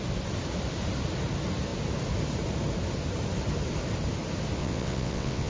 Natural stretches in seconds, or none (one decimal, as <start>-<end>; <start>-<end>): 0.0-4.6